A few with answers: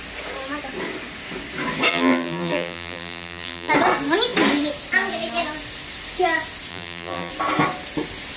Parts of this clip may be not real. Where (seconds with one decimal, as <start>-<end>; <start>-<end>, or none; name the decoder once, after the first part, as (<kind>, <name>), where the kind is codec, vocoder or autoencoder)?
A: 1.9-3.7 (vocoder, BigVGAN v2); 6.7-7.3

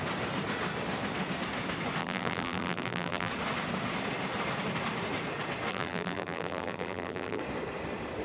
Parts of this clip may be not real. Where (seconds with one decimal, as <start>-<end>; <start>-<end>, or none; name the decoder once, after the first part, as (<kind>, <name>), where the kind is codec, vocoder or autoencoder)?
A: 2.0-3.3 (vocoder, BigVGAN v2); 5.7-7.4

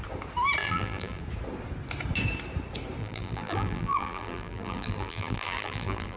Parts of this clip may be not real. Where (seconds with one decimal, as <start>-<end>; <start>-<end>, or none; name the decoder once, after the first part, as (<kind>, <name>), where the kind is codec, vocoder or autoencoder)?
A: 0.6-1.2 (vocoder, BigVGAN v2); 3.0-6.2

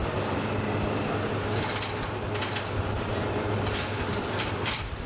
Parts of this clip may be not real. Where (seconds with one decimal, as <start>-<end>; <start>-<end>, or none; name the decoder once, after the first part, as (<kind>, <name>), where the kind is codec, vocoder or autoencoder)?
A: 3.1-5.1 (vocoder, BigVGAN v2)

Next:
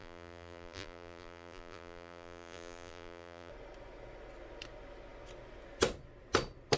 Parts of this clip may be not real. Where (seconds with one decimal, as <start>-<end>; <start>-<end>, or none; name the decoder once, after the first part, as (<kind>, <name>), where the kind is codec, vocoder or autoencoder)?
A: 0.0-3.5 (vocoder, BigVGAN v2)

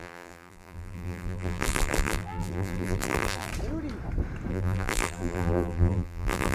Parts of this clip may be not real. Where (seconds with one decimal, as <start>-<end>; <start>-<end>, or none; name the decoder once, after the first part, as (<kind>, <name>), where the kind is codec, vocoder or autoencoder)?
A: 0.0-3.5 (vocoder, BigVGAN v2); 4.5-6.5